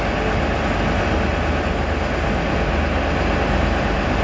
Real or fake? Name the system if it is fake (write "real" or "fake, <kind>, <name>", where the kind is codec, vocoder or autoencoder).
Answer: real